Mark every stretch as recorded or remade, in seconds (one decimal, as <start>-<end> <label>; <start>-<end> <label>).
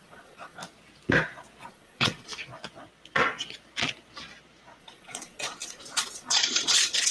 0.0-0.6 remade; 0.6-1.7 recorded; 1.7-2.3 remade; 2.3-4.8 recorded; 4.8-7.1 remade